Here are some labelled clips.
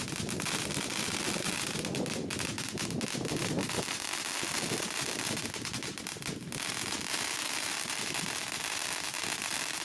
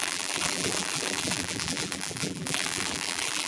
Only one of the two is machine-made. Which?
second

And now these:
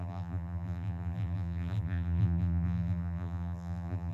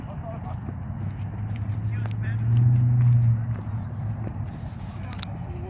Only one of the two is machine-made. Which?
first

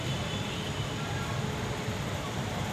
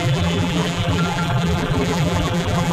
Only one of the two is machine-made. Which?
second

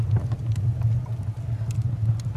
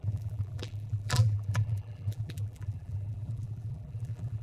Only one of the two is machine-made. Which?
second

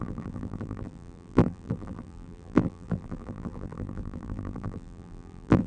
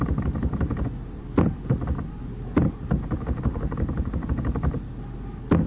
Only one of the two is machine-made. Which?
first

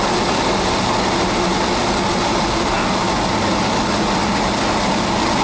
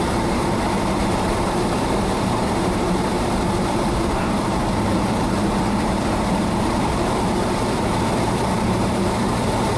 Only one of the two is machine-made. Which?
second